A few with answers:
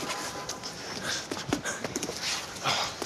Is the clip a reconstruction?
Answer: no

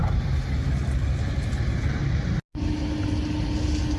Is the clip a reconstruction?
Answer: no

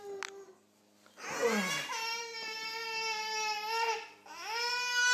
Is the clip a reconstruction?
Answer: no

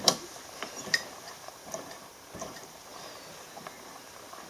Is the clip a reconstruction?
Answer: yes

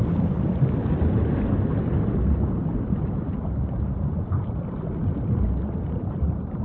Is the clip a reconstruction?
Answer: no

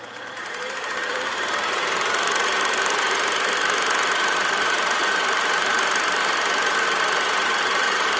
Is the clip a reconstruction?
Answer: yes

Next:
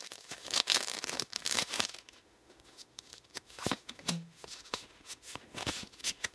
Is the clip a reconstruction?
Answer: yes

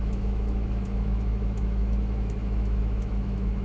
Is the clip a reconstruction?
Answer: yes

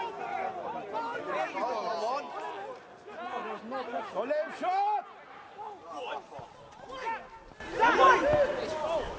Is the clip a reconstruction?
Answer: no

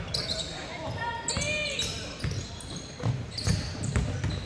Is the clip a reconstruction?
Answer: no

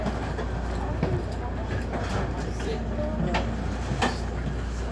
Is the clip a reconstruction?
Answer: no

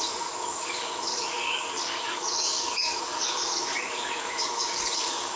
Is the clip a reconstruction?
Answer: yes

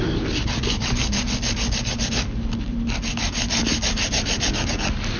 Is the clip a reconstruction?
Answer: no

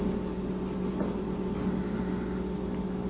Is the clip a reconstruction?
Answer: no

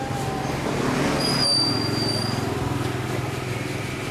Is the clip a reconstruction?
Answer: no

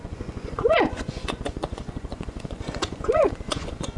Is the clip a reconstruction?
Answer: yes